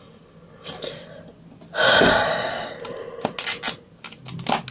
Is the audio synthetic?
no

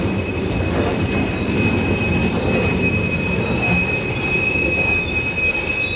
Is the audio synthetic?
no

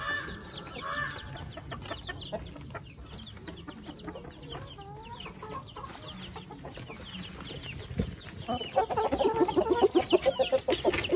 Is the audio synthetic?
no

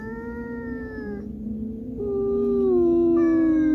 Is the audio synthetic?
no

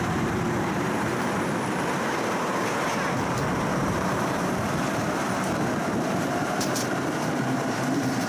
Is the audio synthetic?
yes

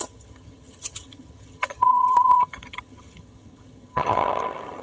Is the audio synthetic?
yes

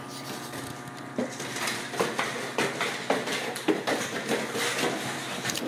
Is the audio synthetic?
no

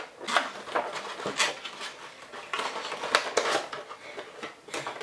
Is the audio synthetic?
no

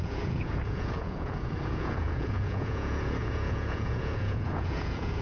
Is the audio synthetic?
yes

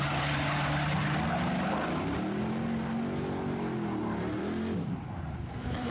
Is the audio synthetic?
no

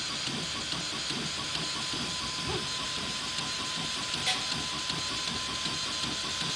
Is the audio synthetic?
no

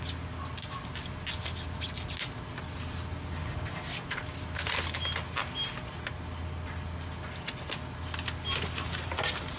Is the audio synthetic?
no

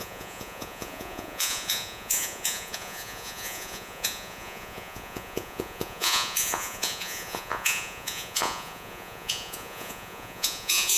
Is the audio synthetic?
yes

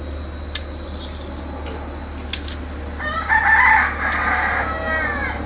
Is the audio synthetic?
no